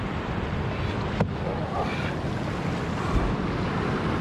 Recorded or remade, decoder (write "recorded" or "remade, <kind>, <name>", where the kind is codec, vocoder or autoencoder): recorded